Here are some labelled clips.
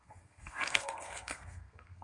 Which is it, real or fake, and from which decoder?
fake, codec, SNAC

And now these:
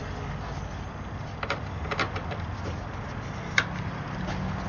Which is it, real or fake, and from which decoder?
real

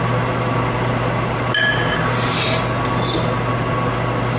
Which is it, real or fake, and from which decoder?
real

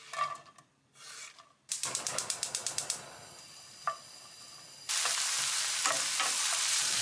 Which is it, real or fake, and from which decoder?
fake, vocoder, BigVGAN v2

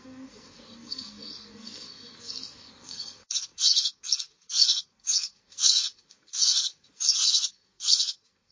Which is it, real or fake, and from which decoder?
fake, codec, SNAC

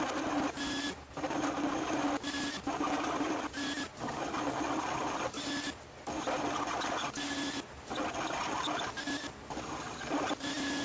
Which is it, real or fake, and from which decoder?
real